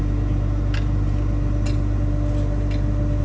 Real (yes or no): yes